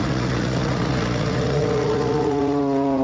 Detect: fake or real fake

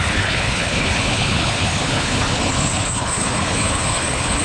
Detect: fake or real fake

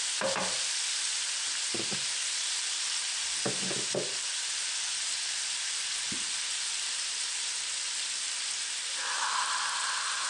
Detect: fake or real real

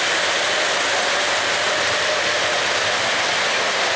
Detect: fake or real real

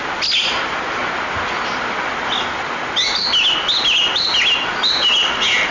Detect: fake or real real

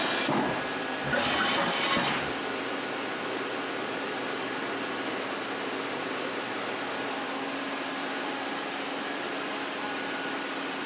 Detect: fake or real real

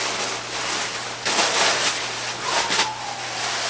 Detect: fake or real real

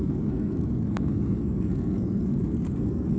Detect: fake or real fake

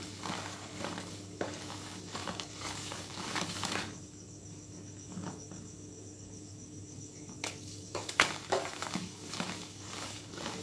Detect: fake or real fake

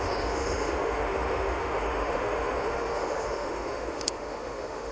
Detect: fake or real fake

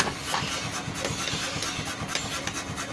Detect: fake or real real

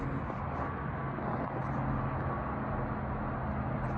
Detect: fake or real real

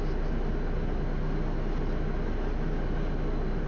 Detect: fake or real real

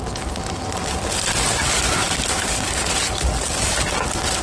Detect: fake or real real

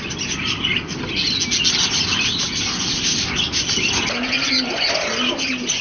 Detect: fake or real real